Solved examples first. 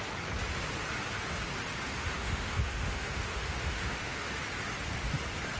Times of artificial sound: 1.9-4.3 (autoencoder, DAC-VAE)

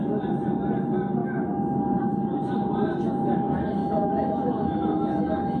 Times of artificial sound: 1.2-2.0 (autoencoder, DAC-VAE); 3.8-5.6

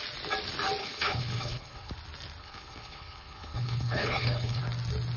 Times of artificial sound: 0.8-1.9 (codec, HILCodec); 2.4-4.6